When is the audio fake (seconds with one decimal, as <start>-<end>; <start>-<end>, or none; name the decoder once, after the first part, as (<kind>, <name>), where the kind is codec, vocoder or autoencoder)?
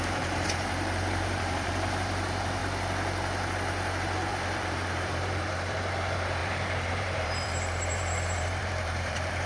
0.0-2.6 (vocoder, BigVGAN v2); 4.3-9.5